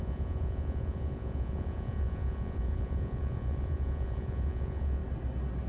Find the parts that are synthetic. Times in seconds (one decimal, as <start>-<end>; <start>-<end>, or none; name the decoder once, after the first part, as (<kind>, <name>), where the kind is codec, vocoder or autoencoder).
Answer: 0.0-5.0 (vocoder, Vocos)